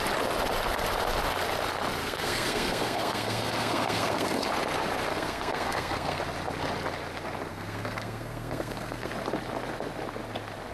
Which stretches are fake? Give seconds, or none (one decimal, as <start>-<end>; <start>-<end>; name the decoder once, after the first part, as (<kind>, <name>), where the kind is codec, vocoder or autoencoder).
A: 2.0-4.5 (codec, SNAC); 5.1-6.2; 7.5-9.1